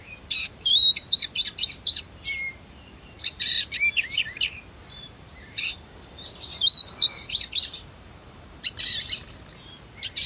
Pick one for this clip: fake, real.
fake